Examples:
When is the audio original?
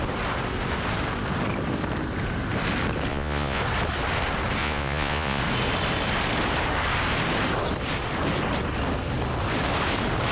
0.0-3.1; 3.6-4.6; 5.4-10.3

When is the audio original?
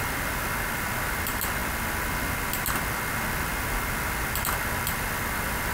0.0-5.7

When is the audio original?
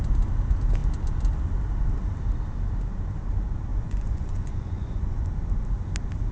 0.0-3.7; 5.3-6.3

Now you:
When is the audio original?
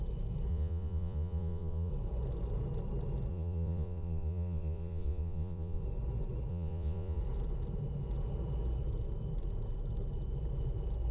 0.0-0.5; 1.9-3.3; 5.8-6.5; 7.2-11.1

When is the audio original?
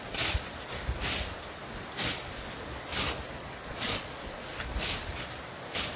0.0-3.7; 4.4-6.0